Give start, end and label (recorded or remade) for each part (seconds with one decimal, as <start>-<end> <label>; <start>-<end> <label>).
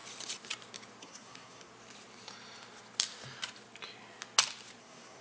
0.0-1.0 recorded; 1.0-1.7 remade; 1.7-4.8 recorded; 4.8-5.2 remade